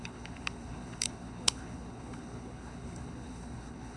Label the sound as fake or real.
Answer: fake